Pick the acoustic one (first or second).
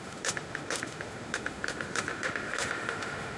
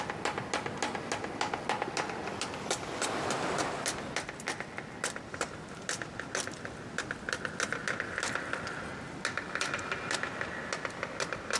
second